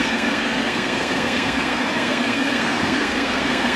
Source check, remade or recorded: remade